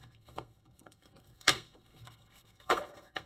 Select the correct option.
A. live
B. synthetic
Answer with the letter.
B